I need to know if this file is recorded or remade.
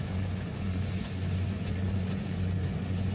remade